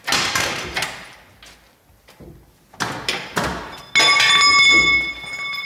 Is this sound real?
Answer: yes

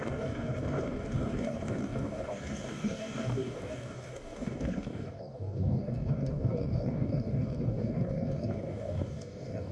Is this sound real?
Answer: no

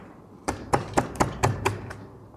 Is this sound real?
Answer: no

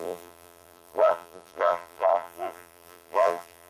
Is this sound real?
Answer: no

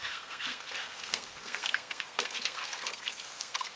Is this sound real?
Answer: no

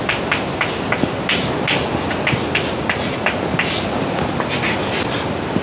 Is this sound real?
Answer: yes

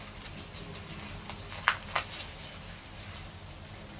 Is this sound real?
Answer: yes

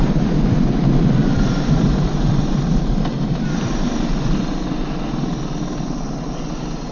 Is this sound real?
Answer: yes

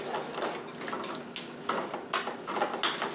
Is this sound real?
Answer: yes